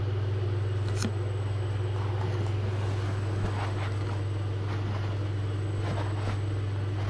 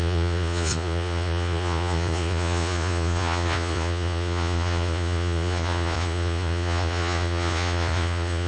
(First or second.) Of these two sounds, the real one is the first